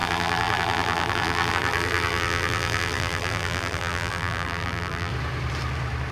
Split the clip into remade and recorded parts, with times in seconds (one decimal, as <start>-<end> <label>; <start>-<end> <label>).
0.0-5.1 remade; 5.1-6.1 recorded